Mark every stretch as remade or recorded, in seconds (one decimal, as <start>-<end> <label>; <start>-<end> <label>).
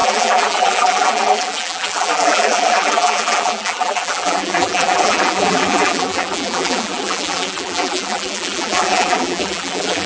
0.0-10.1 remade